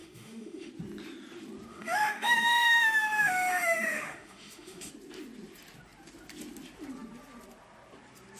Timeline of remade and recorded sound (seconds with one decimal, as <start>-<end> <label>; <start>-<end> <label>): 0.0-0.7 remade; 0.7-1.7 recorded; 1.7-4.9 remade; 4.9-8.4 recorded